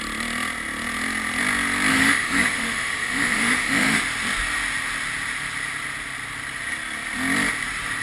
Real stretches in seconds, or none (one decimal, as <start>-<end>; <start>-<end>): 0.0-1.9; 4.0-8.0